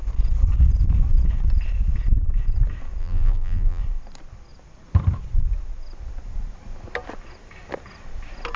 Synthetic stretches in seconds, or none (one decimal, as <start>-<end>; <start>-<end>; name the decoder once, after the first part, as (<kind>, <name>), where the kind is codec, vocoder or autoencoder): 3.0-3.8 (vocoder, BigVGAN v2)